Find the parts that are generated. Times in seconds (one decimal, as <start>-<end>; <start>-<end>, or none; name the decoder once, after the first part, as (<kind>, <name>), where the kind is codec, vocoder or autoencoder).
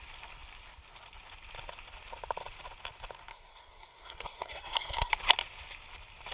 3.3-5.1 (codec, SNAC)